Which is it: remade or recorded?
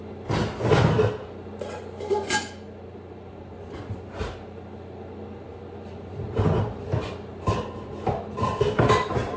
recorded